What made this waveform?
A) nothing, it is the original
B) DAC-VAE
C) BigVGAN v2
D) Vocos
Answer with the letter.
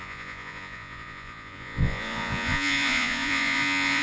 D